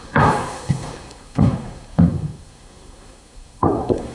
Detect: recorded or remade remade